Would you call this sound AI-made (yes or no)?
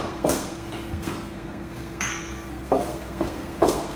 yes